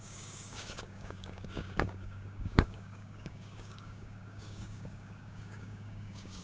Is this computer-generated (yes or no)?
yes